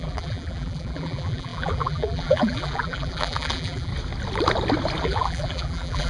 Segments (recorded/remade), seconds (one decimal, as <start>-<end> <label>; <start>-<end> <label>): 0.0-3.9 remade; 3.9-5.0 recorded; 5.0-6.1 remade

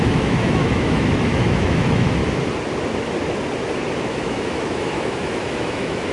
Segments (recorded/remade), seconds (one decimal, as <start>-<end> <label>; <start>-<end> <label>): 0.0-2.2 remade; 2.2-4.0 recorded; 4.0-6.1 remade